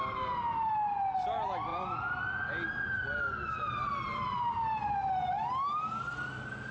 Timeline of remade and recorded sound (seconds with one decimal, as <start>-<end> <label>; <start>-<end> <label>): 0.0-6.7 recorded

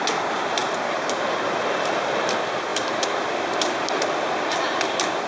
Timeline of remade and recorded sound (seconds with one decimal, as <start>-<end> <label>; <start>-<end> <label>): 0.0-5.3 remade